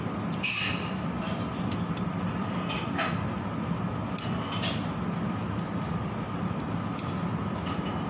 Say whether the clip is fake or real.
real